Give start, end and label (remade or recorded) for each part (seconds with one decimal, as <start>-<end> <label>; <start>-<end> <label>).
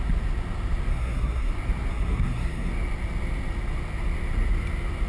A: 0.0-0.9 recorded; 0.9-1.5 remade; 1.5-1.9 recorded; 1.9-2.7 remade; 2.7-5.1 recorded